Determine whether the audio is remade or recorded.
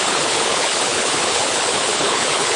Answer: remade